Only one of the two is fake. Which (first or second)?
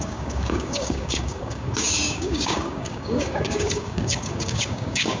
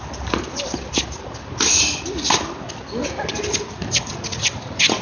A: first